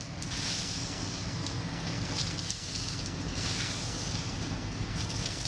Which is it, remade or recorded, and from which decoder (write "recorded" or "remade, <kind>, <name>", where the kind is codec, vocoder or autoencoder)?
remade, codec, SNAC